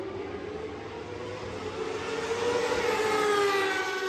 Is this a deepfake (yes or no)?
no